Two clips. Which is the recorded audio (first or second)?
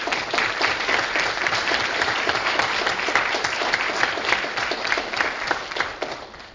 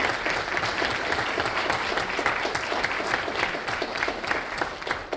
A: second